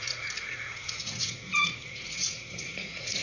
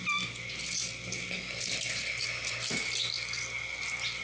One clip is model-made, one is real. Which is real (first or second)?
second